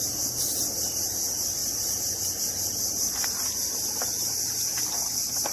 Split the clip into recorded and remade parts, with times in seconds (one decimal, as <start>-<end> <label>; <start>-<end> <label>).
0.0-5.5 recorded